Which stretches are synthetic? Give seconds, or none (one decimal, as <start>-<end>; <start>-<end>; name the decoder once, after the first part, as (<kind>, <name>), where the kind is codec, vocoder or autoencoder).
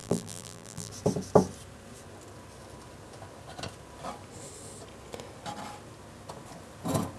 0.0-0.9 (vocoder, BigVGAN v2)